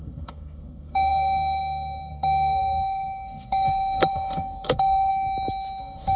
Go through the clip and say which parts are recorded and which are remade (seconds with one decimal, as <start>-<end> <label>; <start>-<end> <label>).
0.0-5.1 remade; 5.1-5.8 recorded; 5.8-6.2 remade